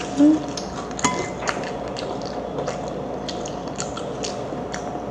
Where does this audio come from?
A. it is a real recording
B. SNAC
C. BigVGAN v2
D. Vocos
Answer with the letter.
A